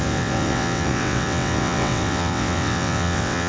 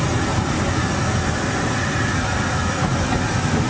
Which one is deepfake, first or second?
first